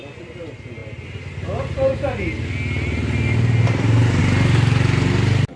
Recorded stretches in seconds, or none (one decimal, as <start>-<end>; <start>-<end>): 0.0-5.6